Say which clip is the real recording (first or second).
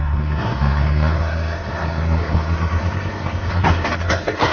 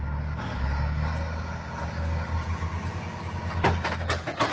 second